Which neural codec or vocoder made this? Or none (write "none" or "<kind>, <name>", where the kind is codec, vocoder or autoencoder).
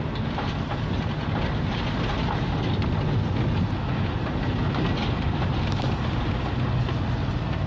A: none